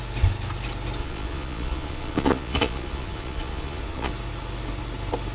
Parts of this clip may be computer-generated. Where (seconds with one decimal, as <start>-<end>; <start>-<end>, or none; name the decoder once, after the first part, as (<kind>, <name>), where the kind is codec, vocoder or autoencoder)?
1.0-4.1 (vocoder, Vocos)